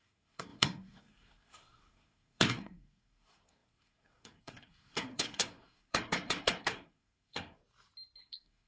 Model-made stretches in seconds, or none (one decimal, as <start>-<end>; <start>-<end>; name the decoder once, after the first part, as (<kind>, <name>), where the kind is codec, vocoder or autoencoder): 0.0-7.6 (codec, SNAC); 8.2-8.7